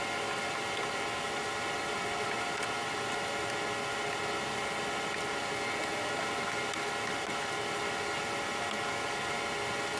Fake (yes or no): no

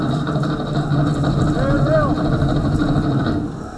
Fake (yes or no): no